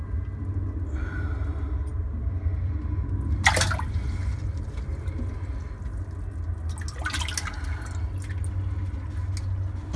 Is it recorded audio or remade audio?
recorded